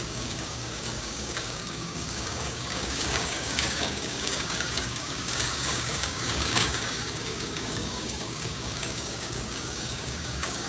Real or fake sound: fake